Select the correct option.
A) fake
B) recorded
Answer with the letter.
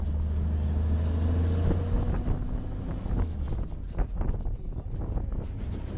B